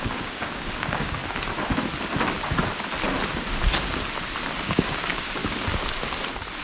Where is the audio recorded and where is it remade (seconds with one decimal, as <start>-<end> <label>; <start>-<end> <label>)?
0.0-1.2 remade; 1.2-4.6 recorded; 4.6-5.4 remade; 5.4-6.6 recorded